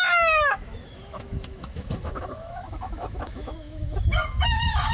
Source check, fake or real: fake